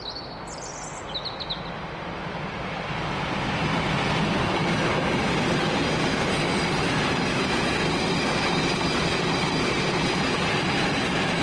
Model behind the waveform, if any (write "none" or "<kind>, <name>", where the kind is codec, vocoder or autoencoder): none